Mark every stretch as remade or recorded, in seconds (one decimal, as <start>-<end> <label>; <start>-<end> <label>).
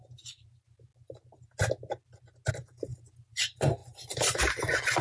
0.0-0.9 remade; 0.9-2.5 recorded; 2.5-5.0 remade